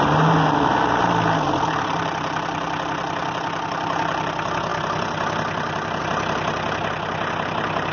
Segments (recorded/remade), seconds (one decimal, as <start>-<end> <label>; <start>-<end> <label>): 0.0-7.9 recorded